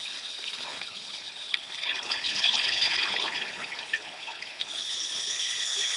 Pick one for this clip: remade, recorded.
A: remade